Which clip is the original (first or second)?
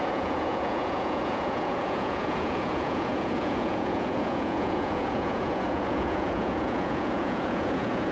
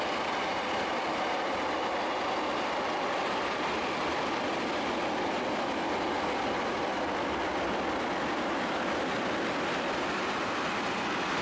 second